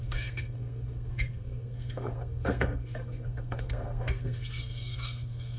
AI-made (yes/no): yes